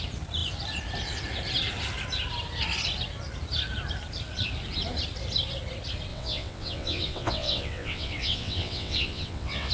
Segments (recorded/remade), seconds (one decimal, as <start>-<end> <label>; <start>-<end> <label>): 0.0-6.1 recorded; 6.1-9.7 remade